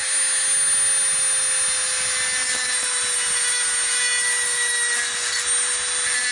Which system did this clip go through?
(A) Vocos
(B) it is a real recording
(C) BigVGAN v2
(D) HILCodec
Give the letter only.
B